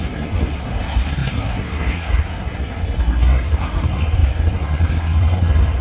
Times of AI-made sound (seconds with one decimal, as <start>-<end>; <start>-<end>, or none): 0.0-5.8

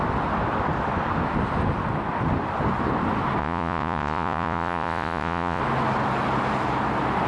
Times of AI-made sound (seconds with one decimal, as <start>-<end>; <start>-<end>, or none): 3.4-5.6

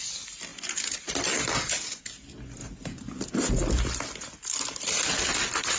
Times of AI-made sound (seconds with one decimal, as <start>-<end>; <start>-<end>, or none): none

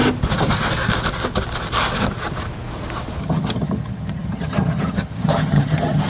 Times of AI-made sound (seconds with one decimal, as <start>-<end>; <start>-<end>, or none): 3.2-6.1

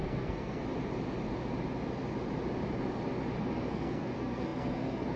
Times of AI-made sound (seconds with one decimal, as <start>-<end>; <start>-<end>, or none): 0.0-0.6; 3.7-5.2

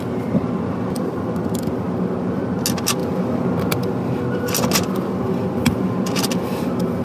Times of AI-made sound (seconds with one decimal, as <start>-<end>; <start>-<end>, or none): none